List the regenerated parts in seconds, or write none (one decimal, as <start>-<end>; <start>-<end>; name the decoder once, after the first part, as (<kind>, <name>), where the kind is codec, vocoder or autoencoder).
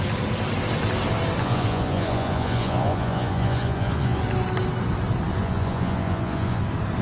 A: 1.4-4.2 (vocoder, Vocos); 5.4-6.6